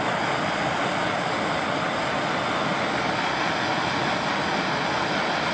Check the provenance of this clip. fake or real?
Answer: real